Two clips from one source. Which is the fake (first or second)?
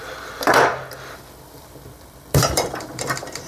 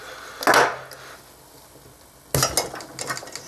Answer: first